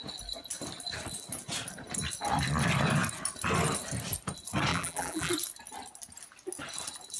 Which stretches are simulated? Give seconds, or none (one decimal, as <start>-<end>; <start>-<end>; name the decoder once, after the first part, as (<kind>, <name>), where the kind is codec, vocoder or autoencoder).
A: 4.7-5.3 (vocoder, BigVGAN v2)